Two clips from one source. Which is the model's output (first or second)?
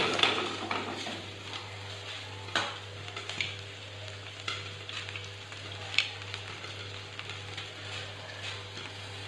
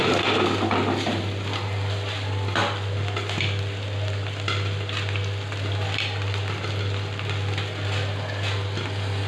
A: first